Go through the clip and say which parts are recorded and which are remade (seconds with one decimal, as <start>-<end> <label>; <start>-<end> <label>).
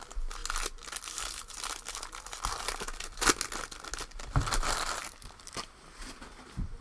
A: 0.0-6.8 recorded